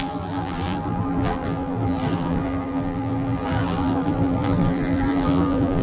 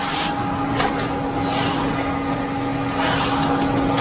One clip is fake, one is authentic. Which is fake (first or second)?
first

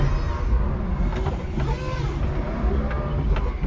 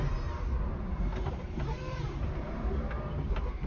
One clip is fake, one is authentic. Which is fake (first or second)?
second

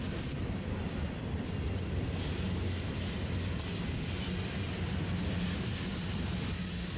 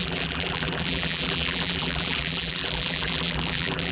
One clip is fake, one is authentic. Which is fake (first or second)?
second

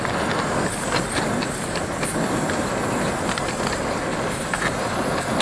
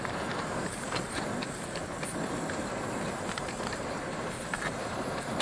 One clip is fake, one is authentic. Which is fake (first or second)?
second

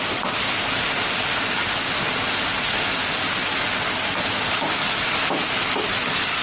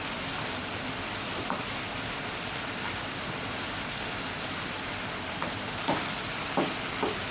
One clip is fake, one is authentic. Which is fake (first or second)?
second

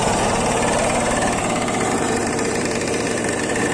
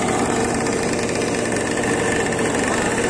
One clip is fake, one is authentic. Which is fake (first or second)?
first